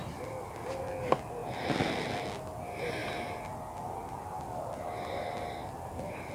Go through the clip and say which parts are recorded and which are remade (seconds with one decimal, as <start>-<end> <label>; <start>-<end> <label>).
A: 0.0-6.3 recorded